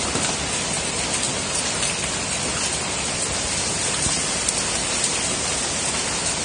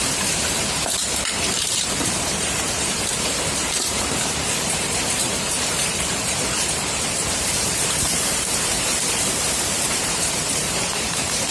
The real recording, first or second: first